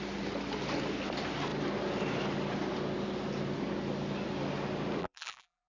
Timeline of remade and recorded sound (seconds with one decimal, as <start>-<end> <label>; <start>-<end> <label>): 0.0-5.0 recorded; 5.0-5.8 remade